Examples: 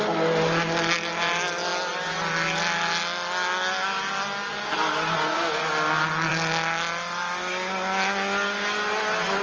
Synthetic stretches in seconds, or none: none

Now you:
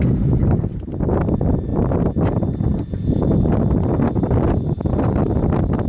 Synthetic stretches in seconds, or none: none

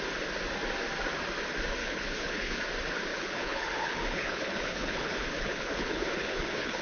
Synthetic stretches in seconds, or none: 1.8-2.6; 3.1-6.8

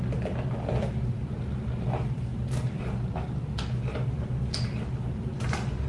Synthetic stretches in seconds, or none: none

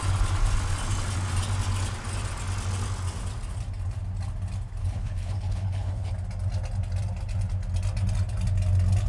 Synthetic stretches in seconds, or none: 4.8-6.1